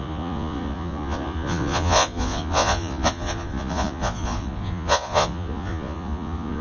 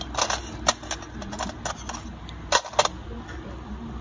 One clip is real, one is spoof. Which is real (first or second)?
second